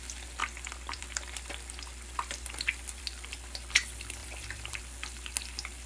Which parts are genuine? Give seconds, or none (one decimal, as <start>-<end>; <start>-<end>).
0.0-0.4; 3.0-4.2; 4.8-5.9